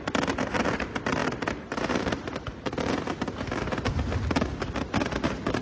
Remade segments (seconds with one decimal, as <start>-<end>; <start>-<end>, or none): none